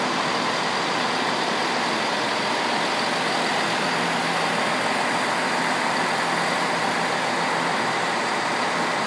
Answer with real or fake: real